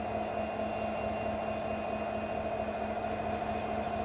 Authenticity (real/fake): real